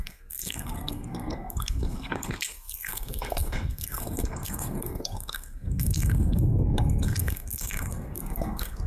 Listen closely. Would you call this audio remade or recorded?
remade